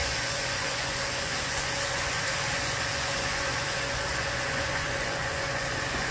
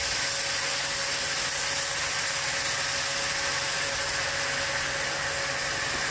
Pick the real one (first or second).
second